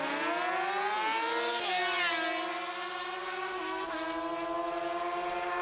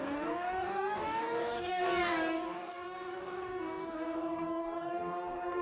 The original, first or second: first